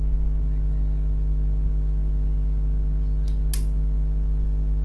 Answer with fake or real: real